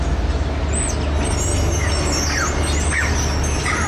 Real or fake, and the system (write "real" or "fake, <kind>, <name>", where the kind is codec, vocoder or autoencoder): real